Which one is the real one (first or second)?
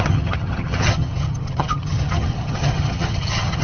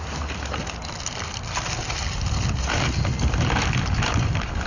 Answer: second